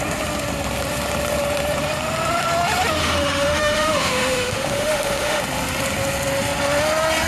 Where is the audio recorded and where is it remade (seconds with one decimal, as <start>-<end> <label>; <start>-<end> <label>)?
0.0-3.0 recorded; 3.0-5.4 remade; 5.4-7.3 recorded